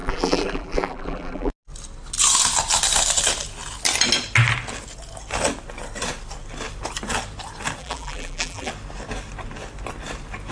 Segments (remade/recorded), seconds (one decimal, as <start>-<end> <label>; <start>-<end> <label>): 0.0-1.5 remade; 1.5-7.8 recorded; 7.8-8.7 remade; 8.7-10.5 recorded